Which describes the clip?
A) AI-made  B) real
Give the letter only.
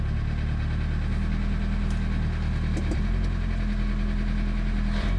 B